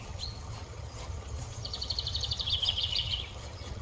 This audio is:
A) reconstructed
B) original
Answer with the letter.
A